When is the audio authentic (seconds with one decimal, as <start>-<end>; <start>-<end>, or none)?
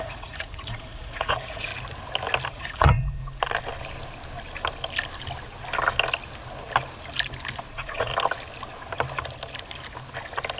1.7-2.5; 3.2-7.7; 8.1-10.6